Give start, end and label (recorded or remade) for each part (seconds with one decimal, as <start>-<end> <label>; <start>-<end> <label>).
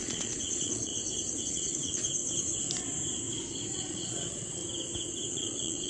0.0-0.9 remade; 0.9-1.5 recorded; 1.5-2.2 remade; 2.2-3.7 recorded; 3.7-4.6 remade; 4.6-5.3 recorded; 5.3-5.9 remade